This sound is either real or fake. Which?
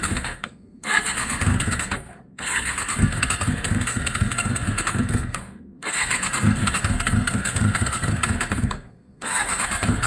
fake